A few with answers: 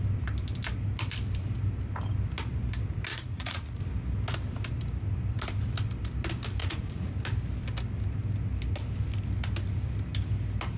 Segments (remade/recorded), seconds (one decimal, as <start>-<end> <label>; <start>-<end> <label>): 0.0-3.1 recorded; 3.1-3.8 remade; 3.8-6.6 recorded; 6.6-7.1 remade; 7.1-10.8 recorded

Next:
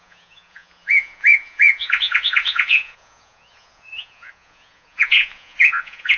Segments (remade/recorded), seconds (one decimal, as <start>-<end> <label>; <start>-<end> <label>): 0.0-6.2 remade

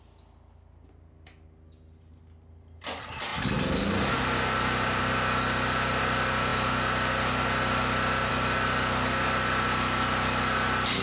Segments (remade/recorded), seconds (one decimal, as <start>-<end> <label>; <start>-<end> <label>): 0.0-11.0 recorded